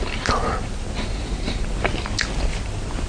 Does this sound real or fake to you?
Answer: real